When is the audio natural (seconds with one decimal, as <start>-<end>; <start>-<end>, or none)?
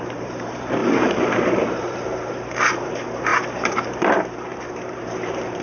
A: none